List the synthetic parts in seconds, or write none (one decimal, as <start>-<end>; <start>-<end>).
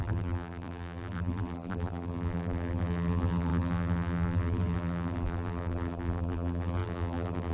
0.0-7.5